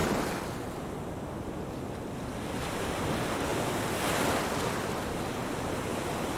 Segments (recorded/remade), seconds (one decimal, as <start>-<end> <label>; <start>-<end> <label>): 0.0-0.6 remade; 0.6-3.5 recorded; 3.5-4.2 remade; 4.2-5.4 recorded; 5.4-6.0 remade; 6.0-6.4 recorded